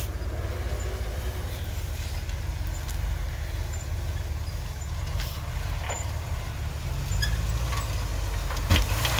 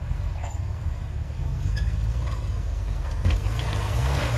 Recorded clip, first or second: first